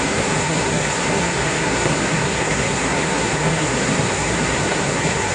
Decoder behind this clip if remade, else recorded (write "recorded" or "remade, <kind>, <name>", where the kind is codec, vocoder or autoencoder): remade, codec, SNAC